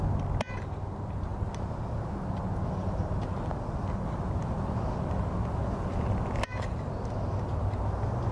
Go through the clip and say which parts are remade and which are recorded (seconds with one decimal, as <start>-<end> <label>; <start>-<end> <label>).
0.0-8.3 recorded